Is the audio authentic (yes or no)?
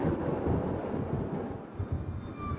yes